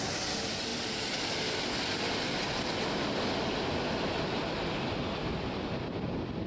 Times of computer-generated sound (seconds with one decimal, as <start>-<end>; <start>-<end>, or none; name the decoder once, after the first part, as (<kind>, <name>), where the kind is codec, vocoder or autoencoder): none